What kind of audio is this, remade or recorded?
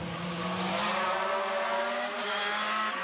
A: recorded